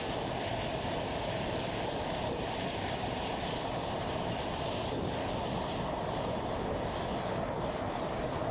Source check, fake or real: real